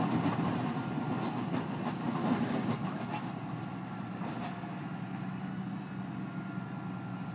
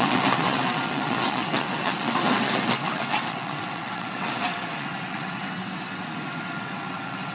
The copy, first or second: second